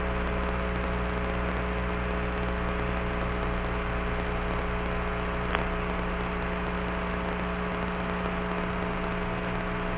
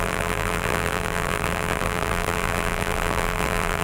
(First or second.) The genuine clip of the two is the first